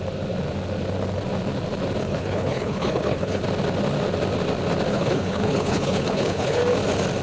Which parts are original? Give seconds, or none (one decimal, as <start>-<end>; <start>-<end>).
0.0-2.0; 3.4-4.9; 6.6-7.2